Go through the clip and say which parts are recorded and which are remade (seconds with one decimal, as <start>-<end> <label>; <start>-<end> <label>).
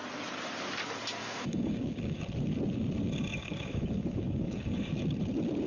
0.0-1.2 recorded; 1.2-2.2 remade; 2.2-3.4 recorded; 3.4-4.9 remade; 4.9-5.7 recorded